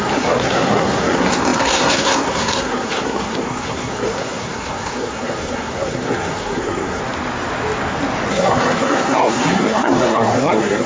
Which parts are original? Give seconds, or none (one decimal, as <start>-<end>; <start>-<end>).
7.0-8.3